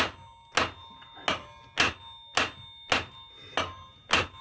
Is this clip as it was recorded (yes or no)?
yes